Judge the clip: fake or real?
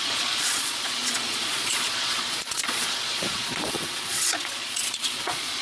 fake